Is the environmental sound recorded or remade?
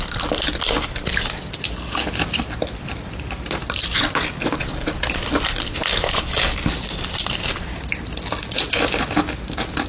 recorded